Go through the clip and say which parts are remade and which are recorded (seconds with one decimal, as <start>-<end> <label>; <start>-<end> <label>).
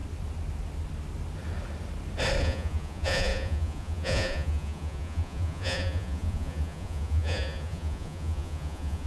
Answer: 0.0-2.4 recorded; 2.4-9.1 remade